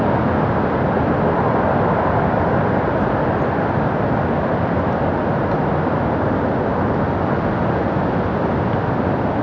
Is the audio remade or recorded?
recorded